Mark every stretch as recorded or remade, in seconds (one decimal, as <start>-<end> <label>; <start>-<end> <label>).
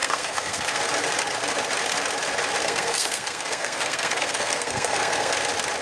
0.0-0.8 remade; 0.8-2.6 recorded; 2.6-5.3 remade; 5.3-5.8 recorded